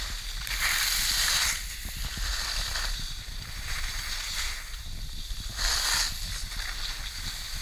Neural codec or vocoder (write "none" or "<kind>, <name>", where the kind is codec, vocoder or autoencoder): none